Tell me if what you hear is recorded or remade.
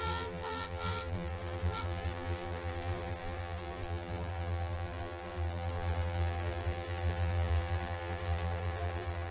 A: remade